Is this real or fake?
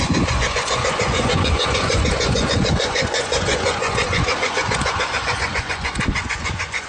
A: fake